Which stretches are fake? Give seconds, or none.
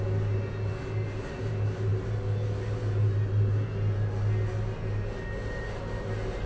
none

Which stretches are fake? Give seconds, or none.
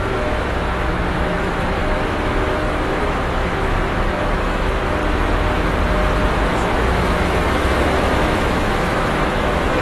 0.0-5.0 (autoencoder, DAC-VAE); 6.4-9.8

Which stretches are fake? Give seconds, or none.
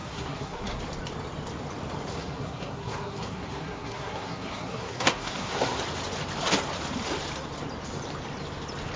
0.0-0.8 (codec, SNAC); 2.1-5.8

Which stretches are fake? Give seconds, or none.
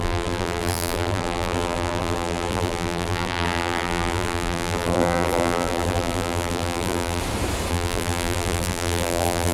0.0-7.2 (vocoder, BigVGAN v2); 7.7-9.5